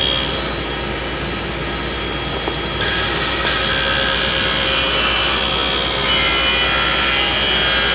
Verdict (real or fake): real